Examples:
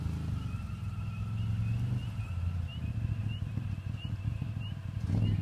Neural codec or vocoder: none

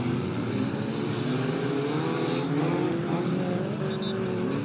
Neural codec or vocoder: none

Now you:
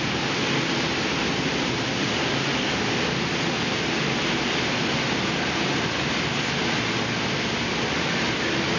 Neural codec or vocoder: none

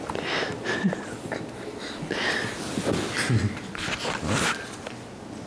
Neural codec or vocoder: none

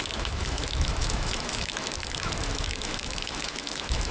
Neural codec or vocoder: autoencoder, DAC-VAE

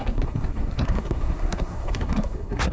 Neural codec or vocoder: codec, SNAC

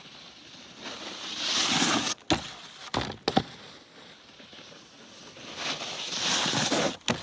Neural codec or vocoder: none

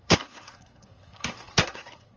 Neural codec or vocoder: codec, SNAC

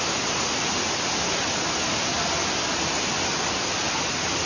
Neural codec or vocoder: none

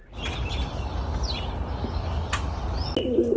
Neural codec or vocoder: none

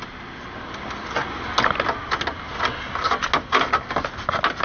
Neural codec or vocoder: none